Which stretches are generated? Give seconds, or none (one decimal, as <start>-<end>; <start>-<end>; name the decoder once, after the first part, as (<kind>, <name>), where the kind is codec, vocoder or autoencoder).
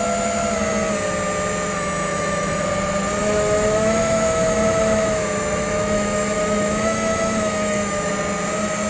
2.1-2.6 (autoencoder, DAC-VAE); 3.2-8.1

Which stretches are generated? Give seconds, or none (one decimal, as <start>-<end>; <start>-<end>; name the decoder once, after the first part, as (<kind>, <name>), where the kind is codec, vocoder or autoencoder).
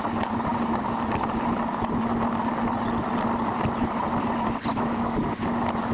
4.7-5.2 (autoencoder, DAC-VAE)